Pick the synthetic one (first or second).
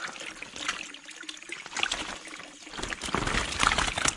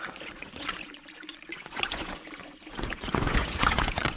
second